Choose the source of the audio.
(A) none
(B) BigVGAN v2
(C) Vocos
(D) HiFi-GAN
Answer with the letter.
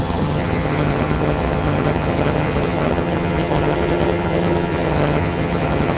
D